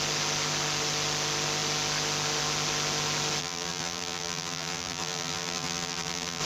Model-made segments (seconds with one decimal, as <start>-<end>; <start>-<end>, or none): 3.4-6.4